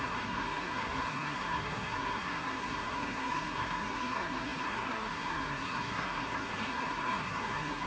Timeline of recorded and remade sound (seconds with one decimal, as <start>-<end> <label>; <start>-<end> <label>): 0.0-7.9 remade